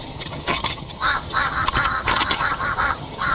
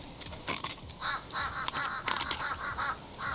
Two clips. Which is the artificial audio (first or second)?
first